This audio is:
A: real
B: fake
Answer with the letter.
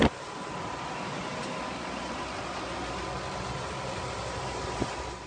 A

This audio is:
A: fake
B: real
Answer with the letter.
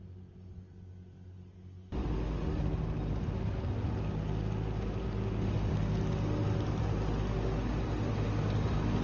B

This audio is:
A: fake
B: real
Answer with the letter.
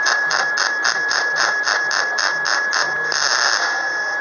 B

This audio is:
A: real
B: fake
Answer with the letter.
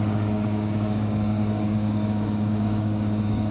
B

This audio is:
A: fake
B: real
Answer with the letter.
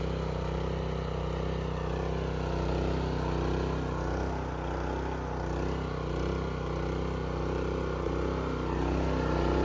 B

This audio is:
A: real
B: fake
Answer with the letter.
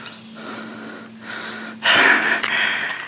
A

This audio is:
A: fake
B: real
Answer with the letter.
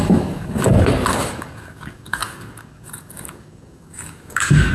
A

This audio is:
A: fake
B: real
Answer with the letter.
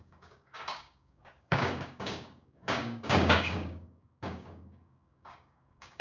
A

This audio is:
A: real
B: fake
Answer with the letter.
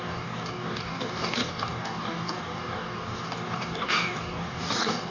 B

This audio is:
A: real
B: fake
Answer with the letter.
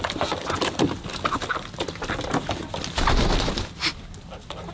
A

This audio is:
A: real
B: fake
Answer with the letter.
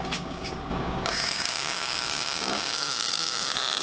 B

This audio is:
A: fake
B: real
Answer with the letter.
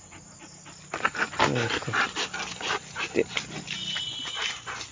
B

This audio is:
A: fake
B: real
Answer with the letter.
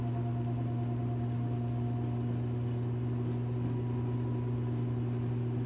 B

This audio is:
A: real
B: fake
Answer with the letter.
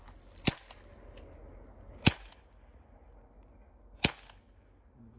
A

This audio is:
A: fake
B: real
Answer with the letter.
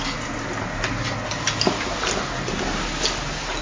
B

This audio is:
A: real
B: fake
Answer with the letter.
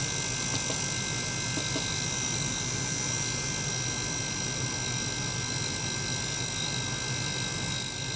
A